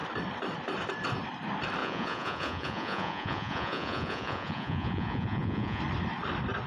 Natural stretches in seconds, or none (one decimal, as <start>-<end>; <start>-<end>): 0.0-1.8; 5.8-6.7